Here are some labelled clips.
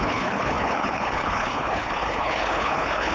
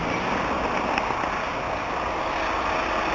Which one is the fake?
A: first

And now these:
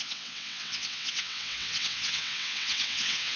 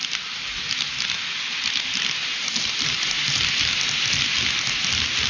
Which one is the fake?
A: first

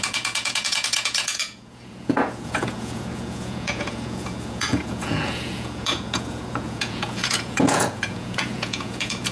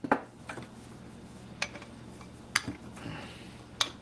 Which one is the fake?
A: first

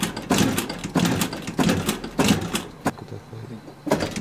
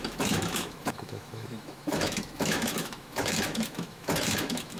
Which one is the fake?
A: second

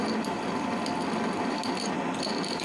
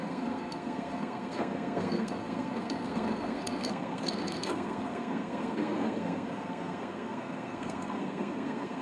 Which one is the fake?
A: second